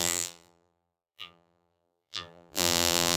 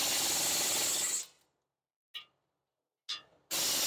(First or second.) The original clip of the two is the second